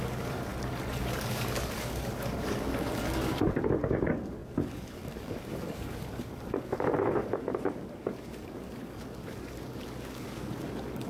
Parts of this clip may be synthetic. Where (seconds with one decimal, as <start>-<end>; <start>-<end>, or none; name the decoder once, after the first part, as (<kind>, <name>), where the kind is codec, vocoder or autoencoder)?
0.0-0.5 (codec, DAC); 1.0-11.1